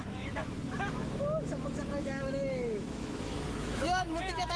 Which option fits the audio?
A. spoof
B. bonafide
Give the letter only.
A